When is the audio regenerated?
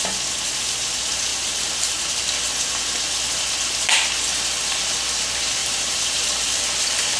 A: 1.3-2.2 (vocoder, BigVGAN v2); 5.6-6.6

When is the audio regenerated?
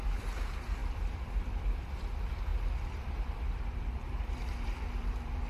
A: 0.0-5.5 (vocoder, BigVGAN v2)